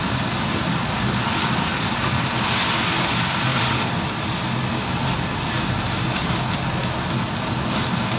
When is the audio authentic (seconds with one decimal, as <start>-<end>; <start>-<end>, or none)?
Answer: 0.0-8.2